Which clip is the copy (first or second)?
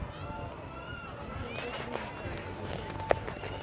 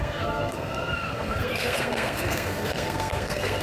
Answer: second